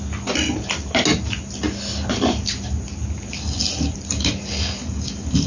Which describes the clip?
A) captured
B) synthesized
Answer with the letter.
A